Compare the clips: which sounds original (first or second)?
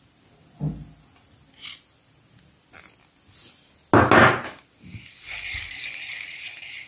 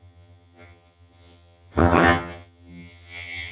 first